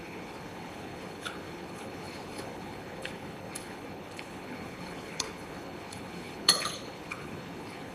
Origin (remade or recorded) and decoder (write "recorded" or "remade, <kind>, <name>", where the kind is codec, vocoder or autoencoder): remade, codec, HILCodec